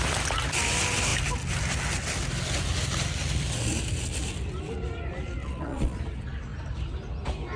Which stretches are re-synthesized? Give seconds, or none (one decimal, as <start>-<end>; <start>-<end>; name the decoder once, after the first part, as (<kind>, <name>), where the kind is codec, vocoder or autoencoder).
5.4-6.0 (vocoder, Vocos)